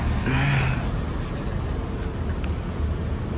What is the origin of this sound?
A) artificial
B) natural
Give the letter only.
B